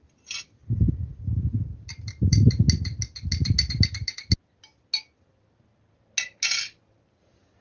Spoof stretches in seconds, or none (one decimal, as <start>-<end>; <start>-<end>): none